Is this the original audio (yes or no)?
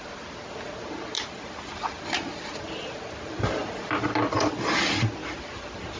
yes